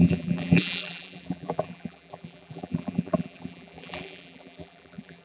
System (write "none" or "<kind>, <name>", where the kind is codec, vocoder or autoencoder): vocoder, BigVGAN v2